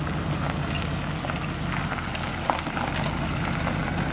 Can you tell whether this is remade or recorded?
recorded